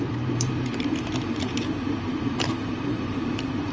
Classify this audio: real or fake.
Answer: fake